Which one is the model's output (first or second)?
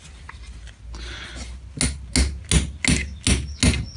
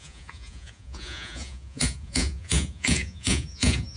second